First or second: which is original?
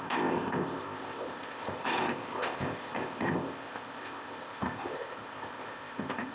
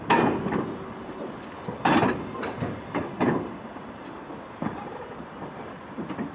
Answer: second